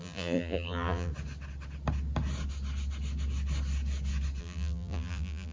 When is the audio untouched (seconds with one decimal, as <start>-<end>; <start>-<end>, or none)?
1.1-4.4